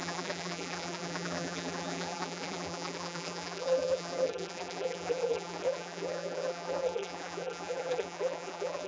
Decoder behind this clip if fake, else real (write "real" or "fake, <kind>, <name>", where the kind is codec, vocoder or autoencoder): fake, vocoder, BigVGAN v2